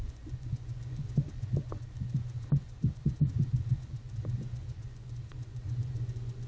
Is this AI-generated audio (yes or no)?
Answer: yes